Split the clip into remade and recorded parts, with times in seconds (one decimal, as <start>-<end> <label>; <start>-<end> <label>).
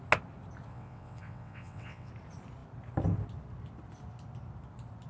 0.0-0.7 recorded; 0.7-2.1 remade; 2.1-5.1 recorded